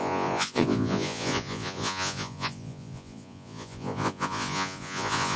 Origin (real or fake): fake